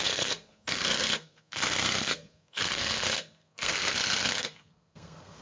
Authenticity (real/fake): fake